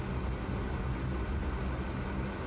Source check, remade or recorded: recorded